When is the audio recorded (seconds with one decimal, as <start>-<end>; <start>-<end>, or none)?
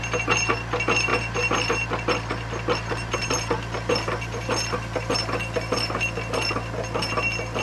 0.0-7.6